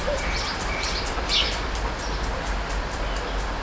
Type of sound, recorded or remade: recorded